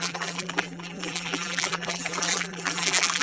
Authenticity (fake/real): fake